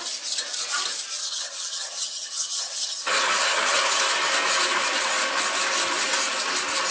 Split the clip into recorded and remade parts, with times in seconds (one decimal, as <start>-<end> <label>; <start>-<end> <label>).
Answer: 0.0-1.2 recorded; 1.2-4.0 remade; 4.0-6.9 recorded